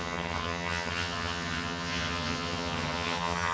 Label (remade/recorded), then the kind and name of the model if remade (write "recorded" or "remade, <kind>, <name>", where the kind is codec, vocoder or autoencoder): remade, vocoder, HiFi-GAN